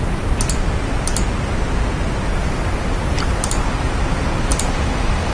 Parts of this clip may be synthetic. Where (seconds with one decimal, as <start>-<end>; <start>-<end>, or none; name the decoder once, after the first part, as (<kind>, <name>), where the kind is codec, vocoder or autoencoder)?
4.5-5.3 (vocoder, BigVGAN v2)